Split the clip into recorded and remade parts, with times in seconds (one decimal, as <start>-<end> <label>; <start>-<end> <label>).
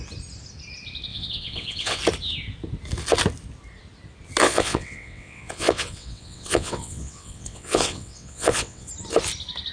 0.0-1.1 recorded; 1.1-2.0 remade; 2.0-4.4 recorded; 4.4-8.9 remade; 8.9-9.7 recorded